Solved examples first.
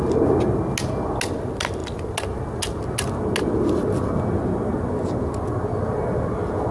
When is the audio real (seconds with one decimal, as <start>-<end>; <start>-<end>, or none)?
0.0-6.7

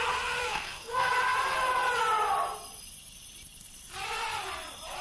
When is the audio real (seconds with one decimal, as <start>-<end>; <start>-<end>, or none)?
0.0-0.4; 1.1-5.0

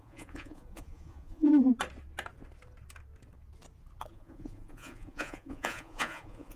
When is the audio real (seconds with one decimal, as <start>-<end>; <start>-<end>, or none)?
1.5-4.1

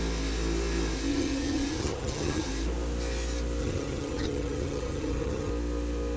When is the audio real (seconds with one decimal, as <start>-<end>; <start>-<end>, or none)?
0.0-1.1; 2.5-3.6; 5.5-6.2

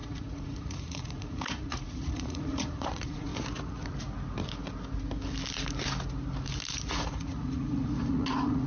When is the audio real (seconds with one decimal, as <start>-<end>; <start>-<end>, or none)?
3.3-6.9